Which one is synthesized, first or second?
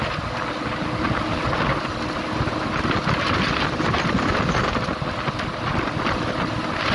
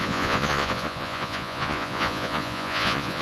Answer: second